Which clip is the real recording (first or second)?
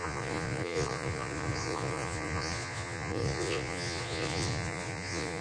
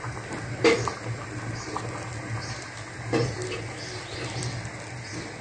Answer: second